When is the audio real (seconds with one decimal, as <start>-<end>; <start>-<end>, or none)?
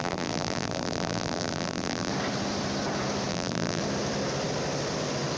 2.1-3.3; 3.8-5.4